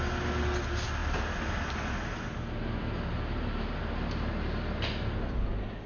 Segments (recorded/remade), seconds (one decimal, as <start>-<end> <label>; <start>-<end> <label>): 0.0-5.9 recorded